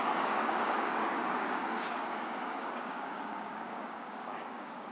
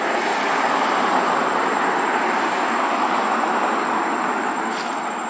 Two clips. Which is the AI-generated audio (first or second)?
first